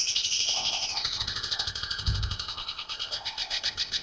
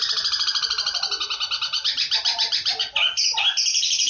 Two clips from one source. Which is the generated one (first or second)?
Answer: first